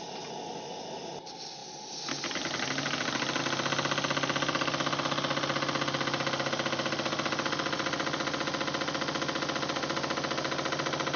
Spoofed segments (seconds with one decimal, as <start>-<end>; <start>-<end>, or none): none